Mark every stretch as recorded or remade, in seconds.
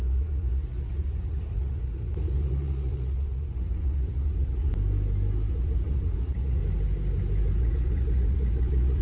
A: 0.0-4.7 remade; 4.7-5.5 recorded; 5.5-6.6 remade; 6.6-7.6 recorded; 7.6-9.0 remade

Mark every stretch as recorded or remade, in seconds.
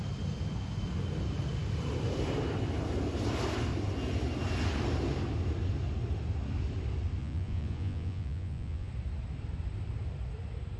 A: 0.0-7.2 recorded; 7.2-8.9 remade; 8.9-10.8 recorded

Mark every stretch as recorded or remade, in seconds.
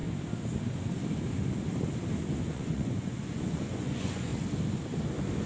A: 0.0-2.4 recorded; 2.4-4.3 remade; 4.3-5.5 recorded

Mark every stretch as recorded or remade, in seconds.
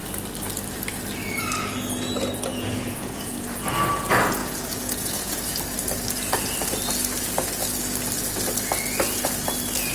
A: 0.0-2.5 recorded; 2.5-3.7 remade; 3.7-4.4 recorded; 4.4-5.5 remade; 5.5-9.9 recorded